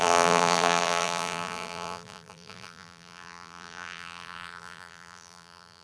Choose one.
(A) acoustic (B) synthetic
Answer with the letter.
B